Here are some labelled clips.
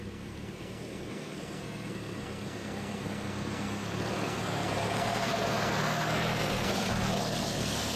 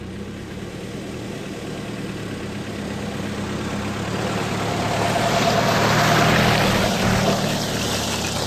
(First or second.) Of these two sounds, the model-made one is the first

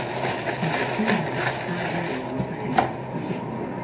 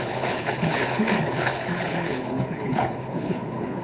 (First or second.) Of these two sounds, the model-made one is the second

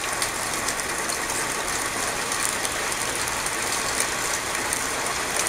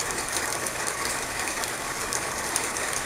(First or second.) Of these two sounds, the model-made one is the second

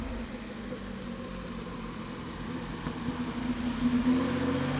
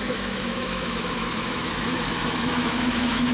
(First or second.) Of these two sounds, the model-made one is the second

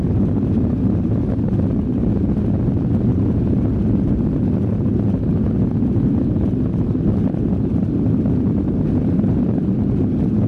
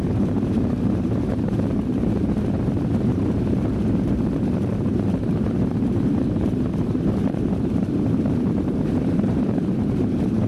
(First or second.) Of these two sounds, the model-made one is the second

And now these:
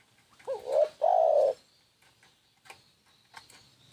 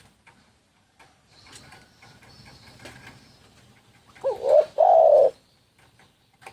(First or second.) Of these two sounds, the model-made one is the second